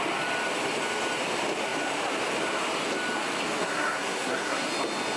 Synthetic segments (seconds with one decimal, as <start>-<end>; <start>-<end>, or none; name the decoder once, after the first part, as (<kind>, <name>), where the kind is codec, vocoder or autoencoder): 3.6-4.7 (codec, SNAC)